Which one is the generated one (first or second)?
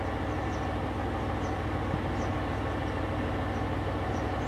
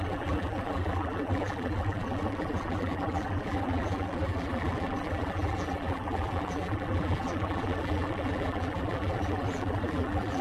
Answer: second